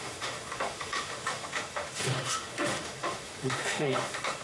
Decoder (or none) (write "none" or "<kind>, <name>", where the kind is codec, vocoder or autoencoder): autoencoder, DAC-VAE